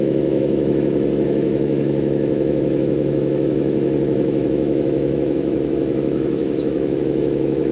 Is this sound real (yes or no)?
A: no